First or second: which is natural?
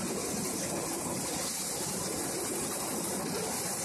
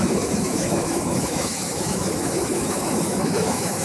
first